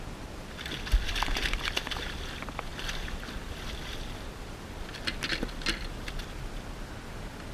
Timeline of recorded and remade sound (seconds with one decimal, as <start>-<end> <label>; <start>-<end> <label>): 0.0-7.5 recorded

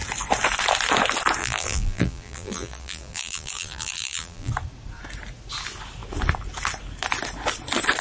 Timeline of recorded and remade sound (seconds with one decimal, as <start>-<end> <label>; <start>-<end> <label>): 0.0-1.4 recorded; 1.4-4.5 remade; 4.5-8.0 recorded

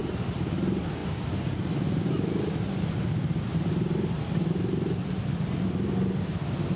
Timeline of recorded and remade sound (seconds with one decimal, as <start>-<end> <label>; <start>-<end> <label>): 0.0-6.8 recorded

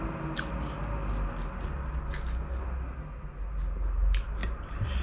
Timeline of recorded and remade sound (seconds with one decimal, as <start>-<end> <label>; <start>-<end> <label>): 0.0-4.4 recorded; 4.4-5.0 remade

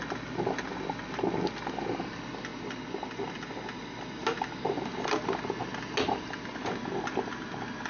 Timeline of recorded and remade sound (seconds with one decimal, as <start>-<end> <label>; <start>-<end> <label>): 0.0-7.9 recorded

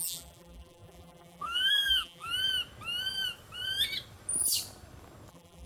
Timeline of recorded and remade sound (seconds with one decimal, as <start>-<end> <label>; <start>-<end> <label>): 0.0-2.3 remade; 2.3-5.3 recorded; 5.3-5.7 remade